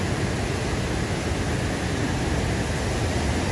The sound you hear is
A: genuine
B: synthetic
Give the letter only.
A